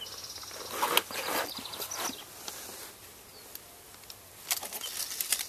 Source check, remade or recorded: recorded